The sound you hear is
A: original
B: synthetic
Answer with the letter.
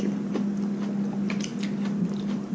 A